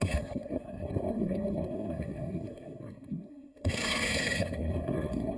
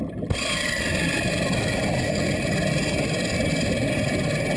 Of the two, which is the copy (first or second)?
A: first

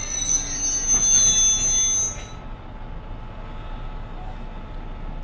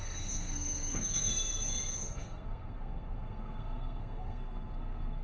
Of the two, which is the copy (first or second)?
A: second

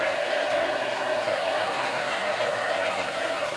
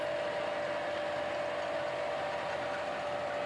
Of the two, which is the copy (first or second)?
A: first